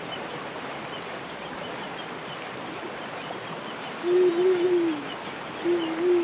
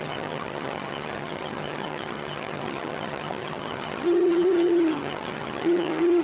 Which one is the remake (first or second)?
second